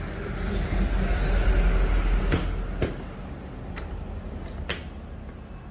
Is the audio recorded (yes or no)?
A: yes